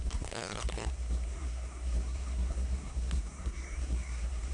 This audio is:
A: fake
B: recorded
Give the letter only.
A